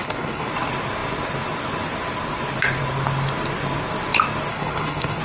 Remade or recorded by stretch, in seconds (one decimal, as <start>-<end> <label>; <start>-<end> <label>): 0.0-0.5 remade; 0.5-4.5 recorded; 4.5-5.2 remade